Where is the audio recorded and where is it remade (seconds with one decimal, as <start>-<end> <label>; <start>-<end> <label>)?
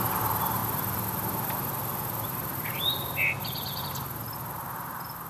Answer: 0.0-0.6 recorded; 0.6-3.8 remade; 3.8-5.3 recorded